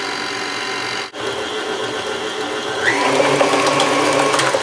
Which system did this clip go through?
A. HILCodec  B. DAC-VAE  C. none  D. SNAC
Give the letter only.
C